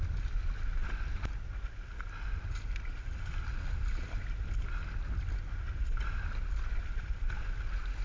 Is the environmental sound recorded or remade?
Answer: recorded